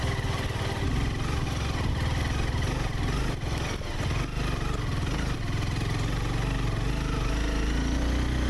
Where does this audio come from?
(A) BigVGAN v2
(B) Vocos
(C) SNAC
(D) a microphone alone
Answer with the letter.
D